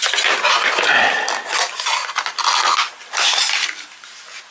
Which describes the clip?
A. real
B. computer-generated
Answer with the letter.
A